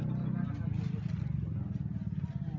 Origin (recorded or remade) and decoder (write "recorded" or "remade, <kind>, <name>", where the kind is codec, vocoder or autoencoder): recorded